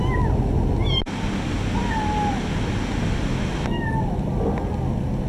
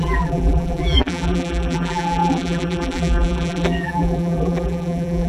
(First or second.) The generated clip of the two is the second